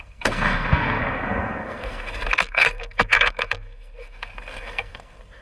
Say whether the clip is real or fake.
fake